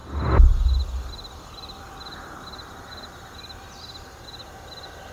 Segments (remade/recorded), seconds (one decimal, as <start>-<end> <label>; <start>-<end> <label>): 0.0-5.1 recorded